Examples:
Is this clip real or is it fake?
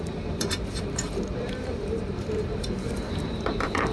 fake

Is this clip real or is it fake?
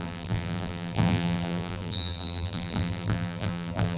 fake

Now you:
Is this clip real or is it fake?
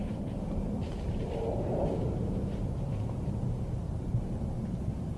fake